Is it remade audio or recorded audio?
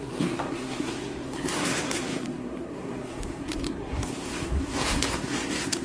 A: remade